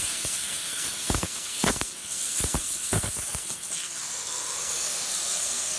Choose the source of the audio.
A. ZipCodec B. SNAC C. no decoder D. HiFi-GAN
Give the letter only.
B